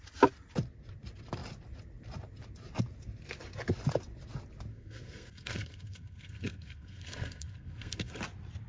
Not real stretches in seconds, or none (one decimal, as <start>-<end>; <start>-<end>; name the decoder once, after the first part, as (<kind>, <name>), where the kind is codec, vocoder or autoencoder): 4.7-8.2 (codec, SNAC)